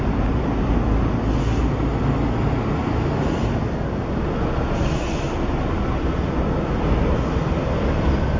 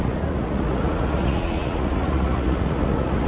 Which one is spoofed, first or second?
second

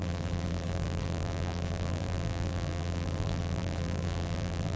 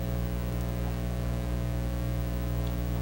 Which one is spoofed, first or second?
first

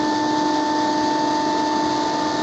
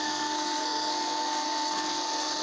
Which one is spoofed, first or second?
second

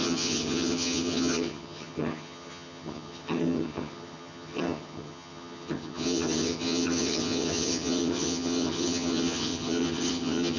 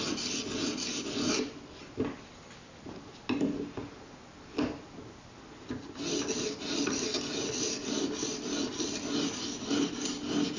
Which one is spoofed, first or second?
first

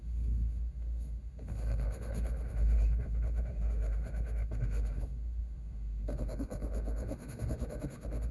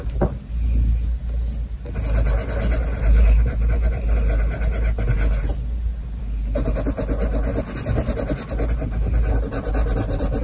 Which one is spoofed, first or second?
first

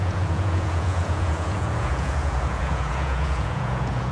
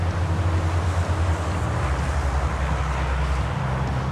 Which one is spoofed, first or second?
first